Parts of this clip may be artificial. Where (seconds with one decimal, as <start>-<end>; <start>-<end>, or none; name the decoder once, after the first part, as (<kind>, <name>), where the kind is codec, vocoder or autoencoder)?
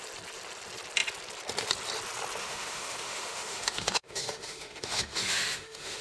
2.4-6.0 (autoencoder, DAC-VAE)